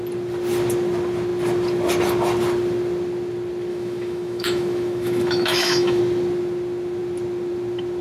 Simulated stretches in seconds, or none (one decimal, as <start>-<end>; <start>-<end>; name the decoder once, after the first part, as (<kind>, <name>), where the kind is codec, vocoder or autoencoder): 3.7-6.0 (autoencoder, DAC-VAE)